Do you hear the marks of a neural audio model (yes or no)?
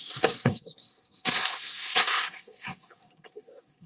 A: yes